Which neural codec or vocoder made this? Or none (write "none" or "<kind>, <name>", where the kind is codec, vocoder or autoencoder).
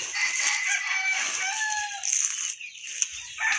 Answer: none